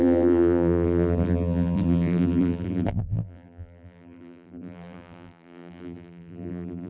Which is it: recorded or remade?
remade